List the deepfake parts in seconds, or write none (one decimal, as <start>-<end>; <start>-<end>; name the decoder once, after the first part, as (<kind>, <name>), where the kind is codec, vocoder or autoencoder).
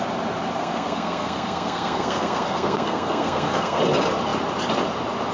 0.6-3.8 (codec, SNAC)